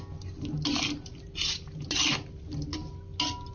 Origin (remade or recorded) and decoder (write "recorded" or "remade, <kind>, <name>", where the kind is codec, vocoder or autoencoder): recorded